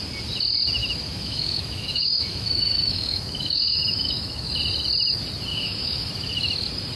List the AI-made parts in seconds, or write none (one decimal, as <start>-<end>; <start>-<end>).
0.8-4.6; 5.5-6.1